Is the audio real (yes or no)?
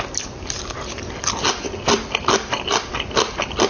yes